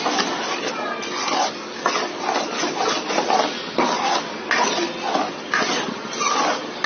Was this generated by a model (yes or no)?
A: no